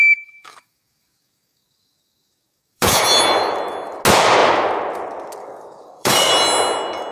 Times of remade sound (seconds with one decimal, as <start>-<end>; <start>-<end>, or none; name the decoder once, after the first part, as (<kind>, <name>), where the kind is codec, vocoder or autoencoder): 0.0-3.0 (codec, DAC); 5.4-6.3

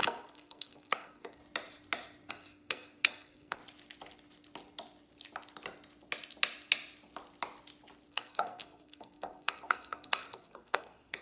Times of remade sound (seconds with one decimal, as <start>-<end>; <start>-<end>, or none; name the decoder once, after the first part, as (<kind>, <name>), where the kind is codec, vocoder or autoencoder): 0.0-1.4 (codec, SNAC); 2.3-3.6; 8.1-11.2

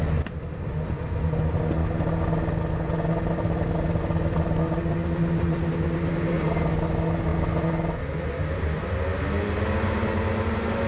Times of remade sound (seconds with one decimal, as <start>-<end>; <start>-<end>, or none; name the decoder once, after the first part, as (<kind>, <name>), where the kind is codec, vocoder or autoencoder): none

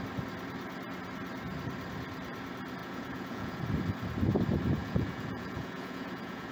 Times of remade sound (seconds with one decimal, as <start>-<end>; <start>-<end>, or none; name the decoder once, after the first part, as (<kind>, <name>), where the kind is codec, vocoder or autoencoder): 2.8-3.6 (vocoder, Vocos); 4.8-6.5

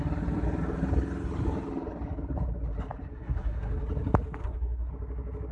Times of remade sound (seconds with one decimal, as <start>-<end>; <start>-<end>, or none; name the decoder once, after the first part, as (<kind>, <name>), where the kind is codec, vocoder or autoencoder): 3.1-3.7 (codec, SNAC); 4.4-4.9

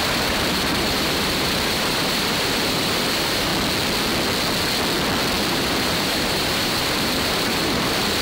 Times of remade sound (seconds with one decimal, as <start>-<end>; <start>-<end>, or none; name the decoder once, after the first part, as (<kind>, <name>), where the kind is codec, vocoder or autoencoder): 0.0-3.5 (vocoder, BigVGAN v2); 5.5-8.2

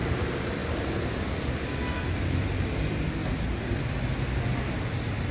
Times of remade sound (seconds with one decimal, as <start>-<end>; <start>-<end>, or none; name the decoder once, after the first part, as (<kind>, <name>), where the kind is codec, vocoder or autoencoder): none

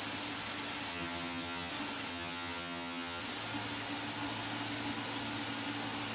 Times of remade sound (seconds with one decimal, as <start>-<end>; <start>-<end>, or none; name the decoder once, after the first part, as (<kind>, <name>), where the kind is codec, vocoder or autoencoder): 0.9-1.7 (vocoder, HiFi-GAN); 2.1-3.2